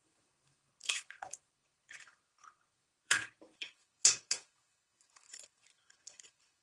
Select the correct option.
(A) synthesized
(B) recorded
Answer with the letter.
A